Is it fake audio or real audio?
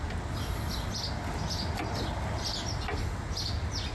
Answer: real